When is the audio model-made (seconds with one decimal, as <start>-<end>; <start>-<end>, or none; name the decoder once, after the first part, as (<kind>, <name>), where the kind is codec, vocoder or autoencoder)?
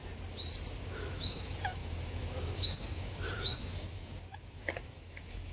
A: 0.9-5.5 (autoencoder, DAC-VAE)